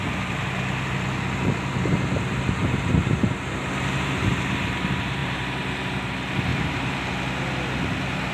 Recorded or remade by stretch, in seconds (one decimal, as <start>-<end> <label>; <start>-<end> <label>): 0.0-2.6 recorded; 2.6-4.6 remade; 4.6-5.2 recorded; 5.2-6.1 remade; 6.1-6.5 recorded; 6.5-7.1 remade; 7.1-8.3 recorded